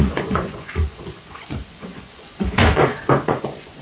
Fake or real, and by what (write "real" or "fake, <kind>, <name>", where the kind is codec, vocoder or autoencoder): fake, vocoder, Vocos